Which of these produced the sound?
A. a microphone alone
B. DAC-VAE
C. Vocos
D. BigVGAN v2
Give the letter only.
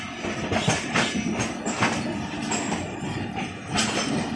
A